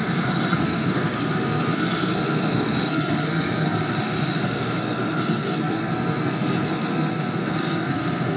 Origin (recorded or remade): remade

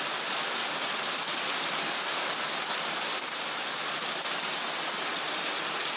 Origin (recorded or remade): recorded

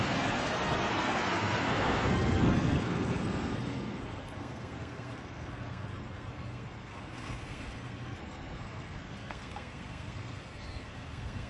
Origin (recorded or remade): remade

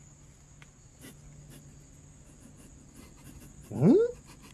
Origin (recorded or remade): recorded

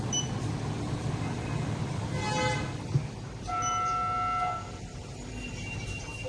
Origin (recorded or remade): recorded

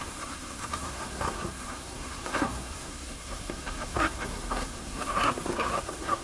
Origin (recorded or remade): remade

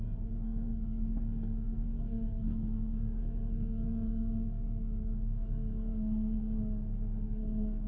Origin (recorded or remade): remade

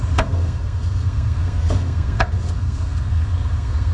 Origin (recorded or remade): remade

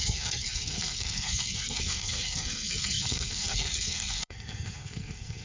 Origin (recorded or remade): remade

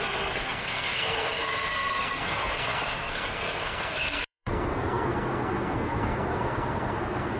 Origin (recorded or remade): remade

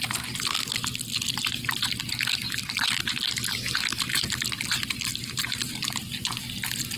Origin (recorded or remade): recorded